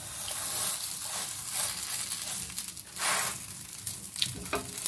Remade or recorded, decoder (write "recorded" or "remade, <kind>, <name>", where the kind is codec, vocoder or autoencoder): recorded